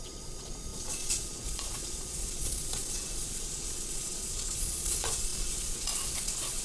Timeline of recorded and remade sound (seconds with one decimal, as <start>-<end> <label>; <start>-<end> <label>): 0.0-6.6 remade